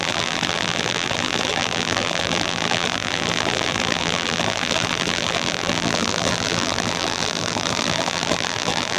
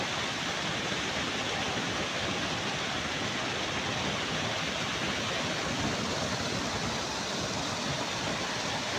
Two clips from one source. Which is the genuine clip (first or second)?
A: second